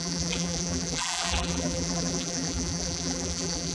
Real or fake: fake